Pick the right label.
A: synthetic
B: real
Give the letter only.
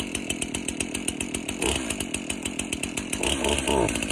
B